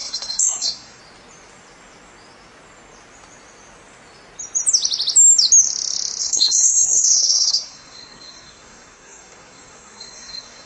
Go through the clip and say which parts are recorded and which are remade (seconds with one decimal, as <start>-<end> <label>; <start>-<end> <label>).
0.0-1.0 remade; 1.0-6.2 recorded; 6.2-10.7 remade